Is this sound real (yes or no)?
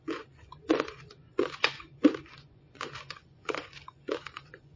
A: no